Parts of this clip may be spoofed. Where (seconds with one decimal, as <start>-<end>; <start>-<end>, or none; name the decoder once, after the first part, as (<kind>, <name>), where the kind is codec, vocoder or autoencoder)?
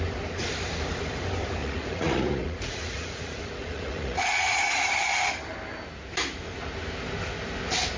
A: 1.6-4.9 (vocoder, Vocos)